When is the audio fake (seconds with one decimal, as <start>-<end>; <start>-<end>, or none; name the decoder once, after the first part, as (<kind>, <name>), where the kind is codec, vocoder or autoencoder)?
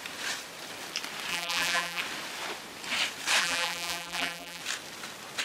1.3-2.0 (vocoder, BigVGAN v2); 3.4-4.6